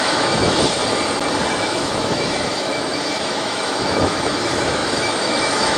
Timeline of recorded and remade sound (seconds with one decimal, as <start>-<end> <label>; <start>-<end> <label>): 0.0-0.8 remade; 0.8-1.5 recorded; 1.5-5.8 remade